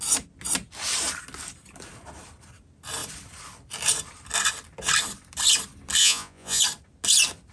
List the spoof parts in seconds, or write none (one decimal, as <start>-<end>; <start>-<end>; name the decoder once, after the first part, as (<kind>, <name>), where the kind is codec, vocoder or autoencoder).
6.0-6.6 (vocoder, Vocos)

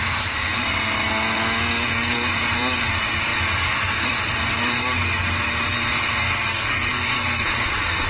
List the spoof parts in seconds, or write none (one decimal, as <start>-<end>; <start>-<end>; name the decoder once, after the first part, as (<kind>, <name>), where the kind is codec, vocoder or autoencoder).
6.5-7.4 (codec, SNAC)

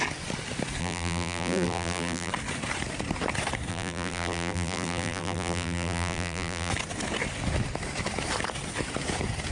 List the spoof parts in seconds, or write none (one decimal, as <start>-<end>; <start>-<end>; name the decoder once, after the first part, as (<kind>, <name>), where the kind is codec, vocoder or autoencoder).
0.8-2.3 (vocoder, BigVGAN v2); 3.7-6.7

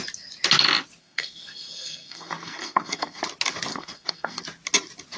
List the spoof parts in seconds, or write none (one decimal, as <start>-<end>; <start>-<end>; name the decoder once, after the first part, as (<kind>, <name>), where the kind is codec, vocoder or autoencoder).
1.0-3.2 (codec, SNAC); 3.7-4.4

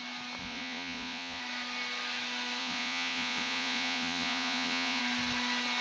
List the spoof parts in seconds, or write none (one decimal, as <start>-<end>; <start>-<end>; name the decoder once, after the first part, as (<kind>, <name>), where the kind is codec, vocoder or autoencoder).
0.4-1.4 (vocoder, Vocos); 2.6-5.0